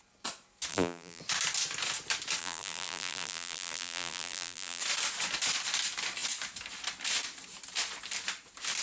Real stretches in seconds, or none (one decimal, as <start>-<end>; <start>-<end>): 0.0-0.7; 1.2-2.4; 4.8-8.8